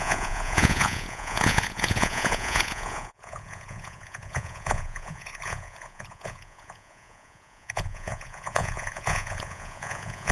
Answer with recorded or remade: remade